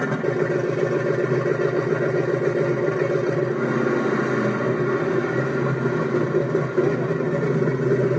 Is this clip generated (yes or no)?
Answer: no